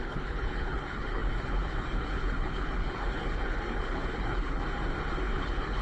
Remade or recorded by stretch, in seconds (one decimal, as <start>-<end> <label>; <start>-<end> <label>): 0.0-4.6 remade; 4.6-5.2 recorded; 5.2-5.8 remade